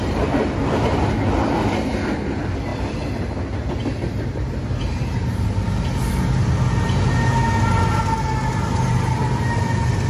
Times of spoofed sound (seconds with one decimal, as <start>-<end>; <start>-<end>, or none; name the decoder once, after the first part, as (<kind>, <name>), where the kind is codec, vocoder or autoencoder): none